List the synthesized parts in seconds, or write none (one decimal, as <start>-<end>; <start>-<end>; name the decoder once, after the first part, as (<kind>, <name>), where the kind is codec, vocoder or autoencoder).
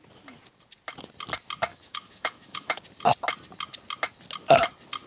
1.7-2.8 (autoencoder, DAC-VAE)